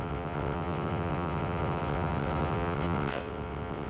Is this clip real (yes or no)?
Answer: no